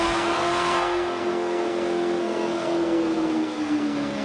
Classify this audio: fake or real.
fake